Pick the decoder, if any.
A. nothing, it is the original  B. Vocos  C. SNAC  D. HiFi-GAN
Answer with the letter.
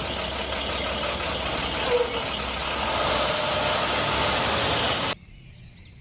A